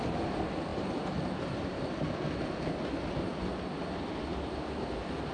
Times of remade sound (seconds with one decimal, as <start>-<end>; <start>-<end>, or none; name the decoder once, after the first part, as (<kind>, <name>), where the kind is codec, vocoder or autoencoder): none